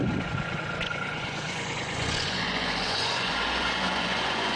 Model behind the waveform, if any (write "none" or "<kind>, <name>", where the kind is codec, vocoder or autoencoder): vocoder, Vocos